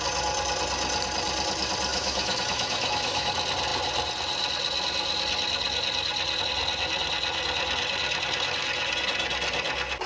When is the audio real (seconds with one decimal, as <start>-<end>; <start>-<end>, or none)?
0.0-1.9; 3.3-10.1